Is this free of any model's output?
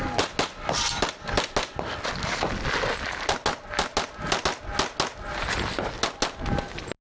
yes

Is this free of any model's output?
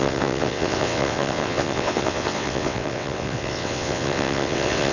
no